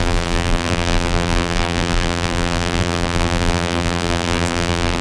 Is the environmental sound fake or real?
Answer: fake